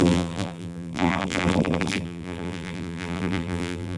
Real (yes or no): no